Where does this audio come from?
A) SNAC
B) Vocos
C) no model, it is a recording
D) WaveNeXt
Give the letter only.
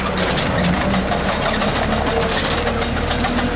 C